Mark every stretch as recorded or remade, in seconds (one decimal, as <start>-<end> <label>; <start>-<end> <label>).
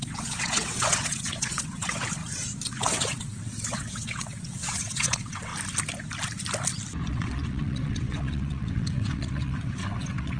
0.0-2.2 remade; 2.2-2.7 recorded; 2.7-5.5 remade; 5.5-7.1 recorded; 7.1-10.4 remade